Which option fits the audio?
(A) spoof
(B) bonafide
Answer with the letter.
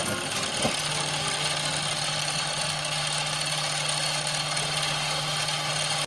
B